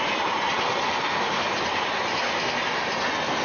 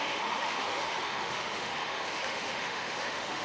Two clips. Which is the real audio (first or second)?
first